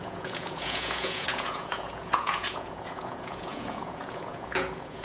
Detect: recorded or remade remade